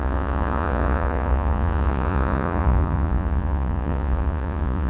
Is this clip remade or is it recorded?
remade